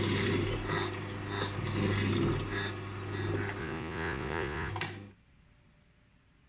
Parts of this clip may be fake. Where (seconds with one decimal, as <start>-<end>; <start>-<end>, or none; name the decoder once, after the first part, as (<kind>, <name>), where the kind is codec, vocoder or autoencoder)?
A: 3.6-4.7 (vocoder, Vocos)